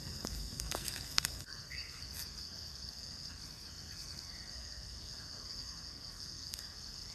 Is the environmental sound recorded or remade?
remade